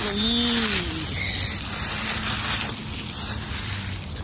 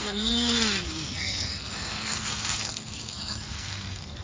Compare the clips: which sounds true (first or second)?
first